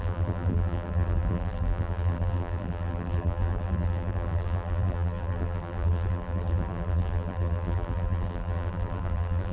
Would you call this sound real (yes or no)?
no